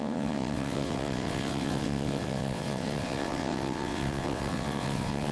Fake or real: fake